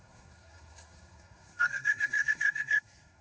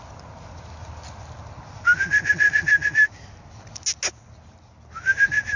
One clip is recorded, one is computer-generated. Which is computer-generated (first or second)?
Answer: first